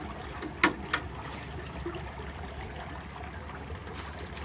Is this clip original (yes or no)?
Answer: yes